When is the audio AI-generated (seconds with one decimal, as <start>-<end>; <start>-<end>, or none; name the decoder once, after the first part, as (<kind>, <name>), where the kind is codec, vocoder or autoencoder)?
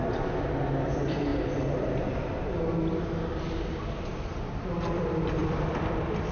5.4-6.3 (vocoder, BigVGAN v2)